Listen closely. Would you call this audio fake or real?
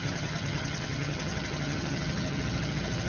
fake